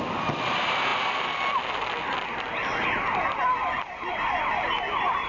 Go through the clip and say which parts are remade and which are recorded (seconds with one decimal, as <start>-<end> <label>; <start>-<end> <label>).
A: 0.0-5.3 recorded

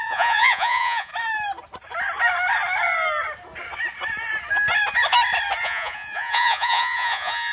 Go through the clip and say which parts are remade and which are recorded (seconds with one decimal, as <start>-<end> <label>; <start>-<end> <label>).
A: 0.0-1.1 remade; 1.1-5.6 recorded; 5.6-7.5 remade

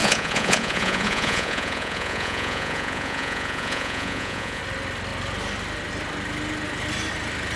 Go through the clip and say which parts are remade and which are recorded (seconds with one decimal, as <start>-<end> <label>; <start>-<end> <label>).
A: 0.0-4.6 remade; 4.6-7.6 recorded

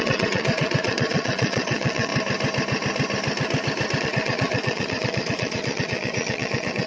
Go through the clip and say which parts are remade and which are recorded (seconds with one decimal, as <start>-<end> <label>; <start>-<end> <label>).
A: 0.0-2.1 remade; 2.1-4.0 recorded; 4.0-6.9 remade